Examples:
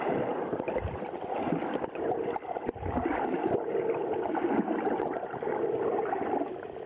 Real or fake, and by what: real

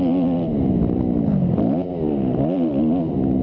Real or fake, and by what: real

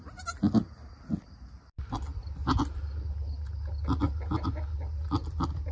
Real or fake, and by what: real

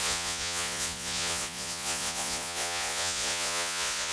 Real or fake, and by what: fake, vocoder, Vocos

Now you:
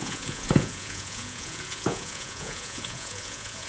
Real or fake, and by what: fake, vocoder, Vocos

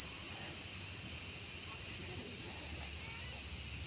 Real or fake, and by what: real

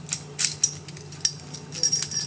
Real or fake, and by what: real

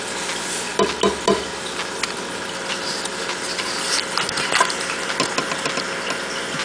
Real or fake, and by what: real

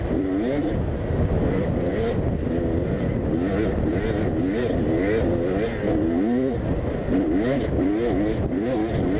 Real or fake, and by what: real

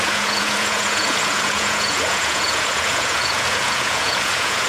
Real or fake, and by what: fake, vocoder, Vocos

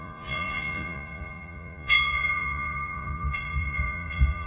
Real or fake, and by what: fake, vocoder, Vocos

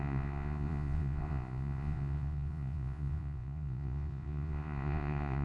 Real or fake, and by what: fake, vocoder, Vocos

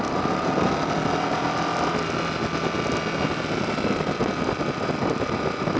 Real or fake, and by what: real